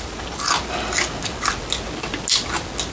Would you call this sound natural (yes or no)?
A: yes